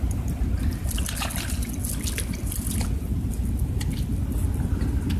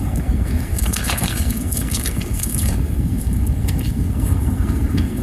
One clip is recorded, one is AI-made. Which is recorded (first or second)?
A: first